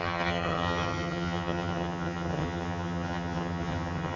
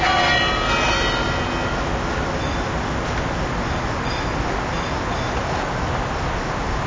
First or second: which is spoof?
first